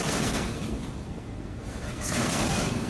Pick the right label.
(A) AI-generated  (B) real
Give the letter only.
A